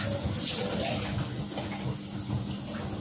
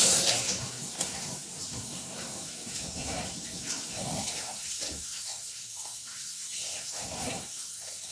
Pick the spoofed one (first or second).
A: second